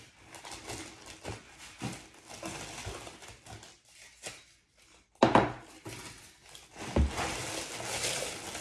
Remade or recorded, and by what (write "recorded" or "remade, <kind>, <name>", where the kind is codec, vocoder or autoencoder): recorded